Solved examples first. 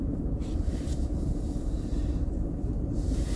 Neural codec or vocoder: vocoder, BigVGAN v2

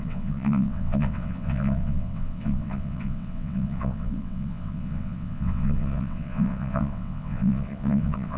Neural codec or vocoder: vocoder, WaveNeXt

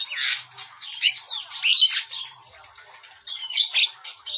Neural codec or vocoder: none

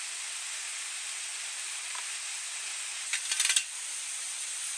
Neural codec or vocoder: none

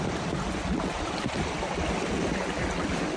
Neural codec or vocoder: none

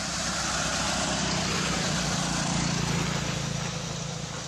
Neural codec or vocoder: none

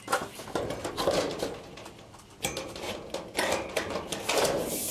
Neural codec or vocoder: none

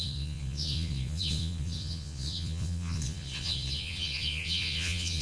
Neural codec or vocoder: vocoder, Vocos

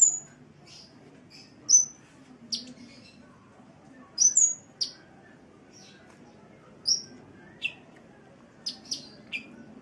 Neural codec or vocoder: none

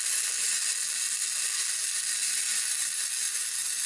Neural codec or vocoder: none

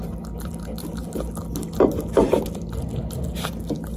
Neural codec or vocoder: none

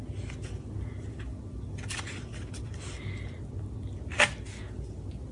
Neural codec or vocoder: none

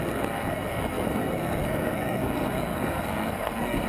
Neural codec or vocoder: codec, SNAC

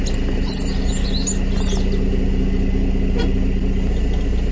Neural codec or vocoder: none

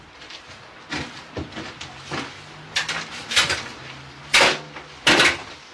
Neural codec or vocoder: none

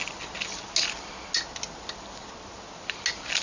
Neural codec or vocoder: none